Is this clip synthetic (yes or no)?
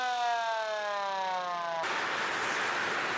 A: no